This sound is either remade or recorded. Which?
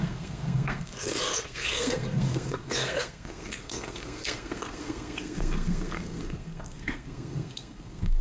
remade